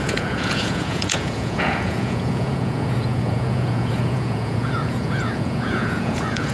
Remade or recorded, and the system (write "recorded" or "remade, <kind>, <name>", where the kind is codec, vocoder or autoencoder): remade, vocoder, Vocos